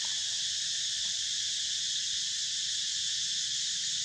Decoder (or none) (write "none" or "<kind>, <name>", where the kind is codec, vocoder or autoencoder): none